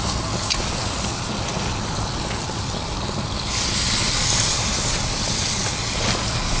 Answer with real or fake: real